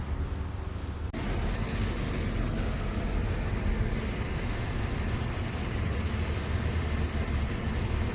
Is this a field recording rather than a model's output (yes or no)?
yes